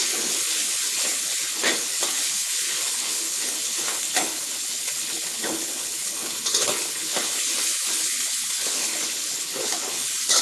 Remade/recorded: remade